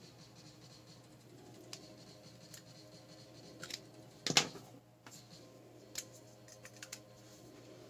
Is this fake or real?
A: real